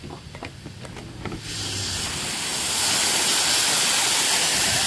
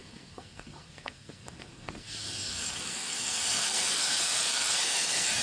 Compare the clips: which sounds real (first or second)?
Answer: first